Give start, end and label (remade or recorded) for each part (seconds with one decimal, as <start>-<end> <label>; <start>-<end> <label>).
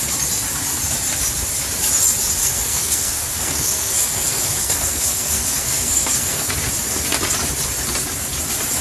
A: 0.0-2.4 recorded; 2.4-6.5 remade; 6.5-8.8 recorded